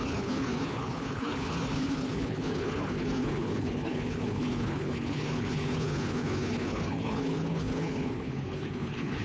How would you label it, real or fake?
fake